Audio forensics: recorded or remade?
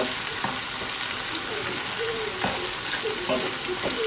recorded